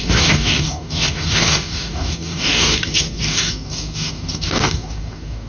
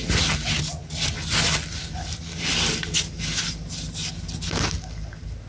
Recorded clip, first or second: second